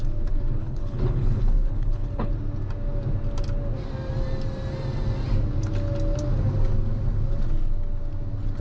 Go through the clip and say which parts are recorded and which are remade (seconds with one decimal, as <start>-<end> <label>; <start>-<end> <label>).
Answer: 0.0-0.6 recorded; 0.6-2.3 remade; 2.3-8.6 recorded